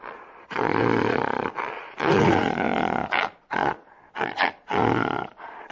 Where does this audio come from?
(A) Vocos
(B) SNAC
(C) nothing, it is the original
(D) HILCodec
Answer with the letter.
A